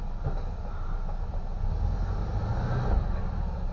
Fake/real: real